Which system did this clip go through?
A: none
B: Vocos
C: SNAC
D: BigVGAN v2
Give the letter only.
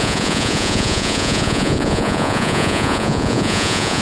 B